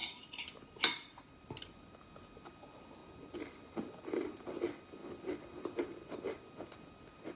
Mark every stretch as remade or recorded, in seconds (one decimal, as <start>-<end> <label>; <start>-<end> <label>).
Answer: 0.0-7.4 recorded